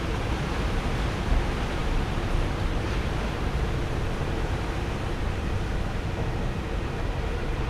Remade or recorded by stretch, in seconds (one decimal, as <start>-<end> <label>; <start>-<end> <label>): 0.0-7.7 recorded